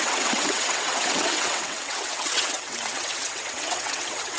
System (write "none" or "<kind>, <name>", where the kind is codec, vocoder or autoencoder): vocoder, WaveNeXt